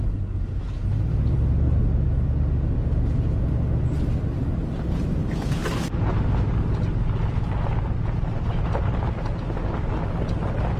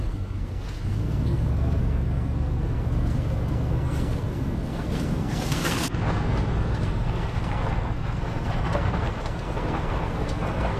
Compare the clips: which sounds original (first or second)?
first